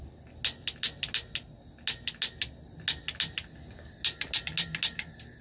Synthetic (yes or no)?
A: no